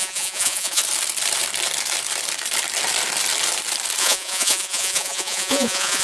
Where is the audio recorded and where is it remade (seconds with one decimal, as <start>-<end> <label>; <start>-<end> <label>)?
0.0-0.8 remade; 0.8-4.0 recorded; 4.0-6.0 remade